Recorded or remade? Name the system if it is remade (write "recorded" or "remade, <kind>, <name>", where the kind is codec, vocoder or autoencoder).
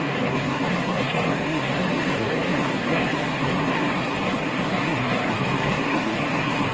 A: remade, codec, SNAC